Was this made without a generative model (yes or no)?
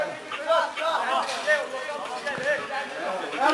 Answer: yes